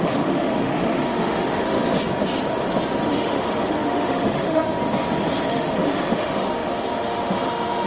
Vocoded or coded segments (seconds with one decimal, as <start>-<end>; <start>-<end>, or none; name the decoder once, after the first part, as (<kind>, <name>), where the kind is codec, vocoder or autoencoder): 0.0-1.8 (autoencoder, DAC-VAE); 3.1-4.6; 5.5-7.9